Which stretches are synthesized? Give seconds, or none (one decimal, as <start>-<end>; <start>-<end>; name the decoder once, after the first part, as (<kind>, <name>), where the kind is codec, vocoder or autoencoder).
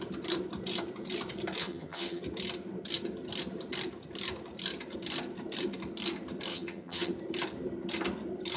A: 1.6-2.2 (vocoder, HiFi-GAN); 6.5-7.1